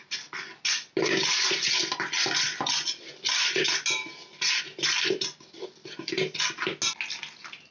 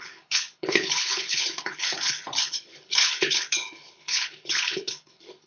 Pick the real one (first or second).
first